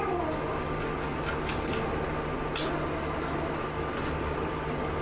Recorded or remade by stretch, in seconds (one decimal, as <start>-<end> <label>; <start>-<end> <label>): 0.0-5.0 recorded